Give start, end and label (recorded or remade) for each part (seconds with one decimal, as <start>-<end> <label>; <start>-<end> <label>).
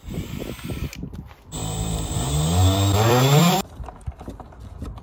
0.0-5.0 remade